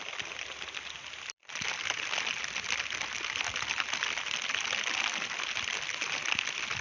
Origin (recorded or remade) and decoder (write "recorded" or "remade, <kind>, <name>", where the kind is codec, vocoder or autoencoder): recorded